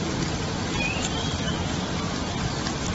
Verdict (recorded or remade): recorded